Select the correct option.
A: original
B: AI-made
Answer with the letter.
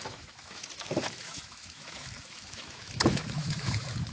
B